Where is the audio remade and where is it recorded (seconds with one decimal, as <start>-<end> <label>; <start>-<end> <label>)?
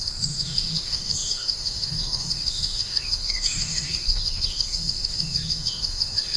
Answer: 0.0-6.4 remade